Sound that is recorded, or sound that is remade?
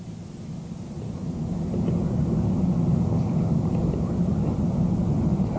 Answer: recorded